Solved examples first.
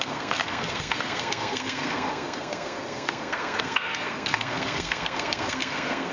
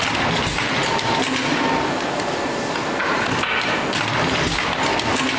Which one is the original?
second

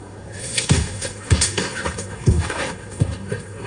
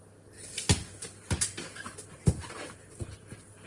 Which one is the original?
second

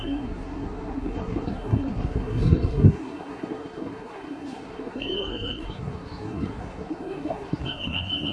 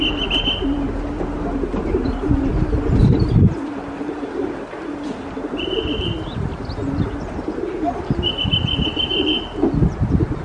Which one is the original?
second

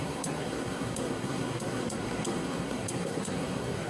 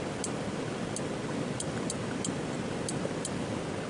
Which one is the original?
second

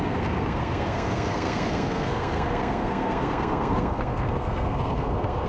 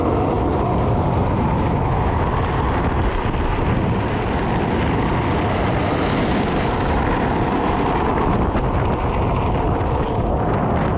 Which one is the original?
second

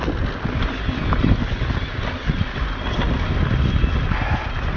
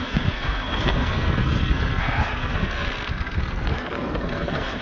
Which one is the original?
first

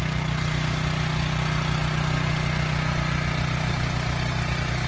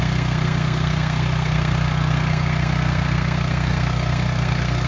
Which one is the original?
first